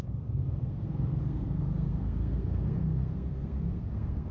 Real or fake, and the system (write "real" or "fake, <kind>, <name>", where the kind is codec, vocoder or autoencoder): fake, codec, SNAC